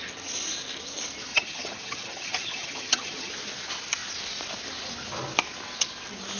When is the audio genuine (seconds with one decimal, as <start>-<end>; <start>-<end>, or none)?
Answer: 0.0-1.3; 3.3-6.4